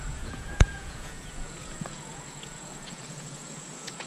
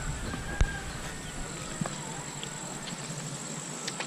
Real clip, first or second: second